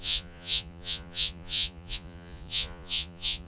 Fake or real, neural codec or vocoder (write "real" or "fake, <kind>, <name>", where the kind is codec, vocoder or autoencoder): fake, vocoder, Vocos